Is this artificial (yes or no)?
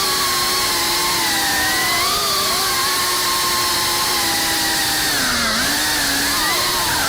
no